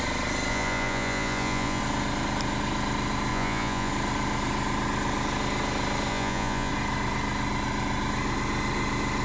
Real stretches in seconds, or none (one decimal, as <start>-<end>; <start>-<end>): 0.0-0.5; 1.8-3.3; 3.9-6.1; 6.7-9.2